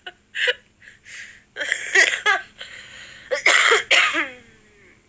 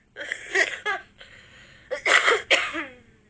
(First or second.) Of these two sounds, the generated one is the second